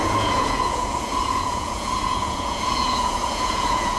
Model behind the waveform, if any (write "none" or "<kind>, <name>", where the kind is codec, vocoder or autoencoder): vocoder, Vocos